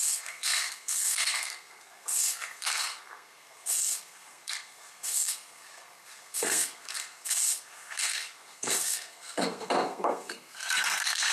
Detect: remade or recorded remade